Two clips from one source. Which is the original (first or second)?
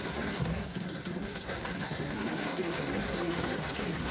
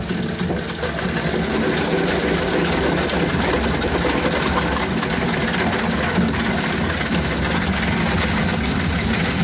second